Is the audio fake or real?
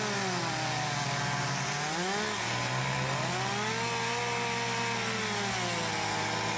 real